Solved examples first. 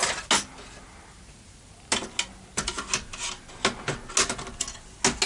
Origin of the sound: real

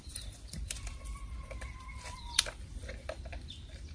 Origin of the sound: fake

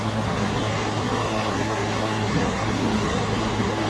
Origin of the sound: fake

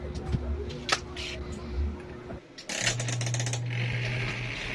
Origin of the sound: real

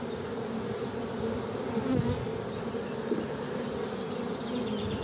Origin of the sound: real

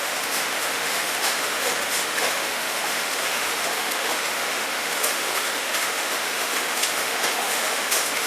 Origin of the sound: fake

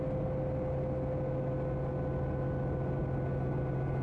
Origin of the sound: real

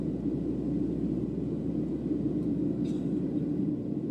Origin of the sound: real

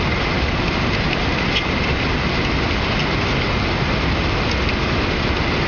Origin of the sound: real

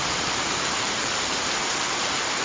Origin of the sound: fake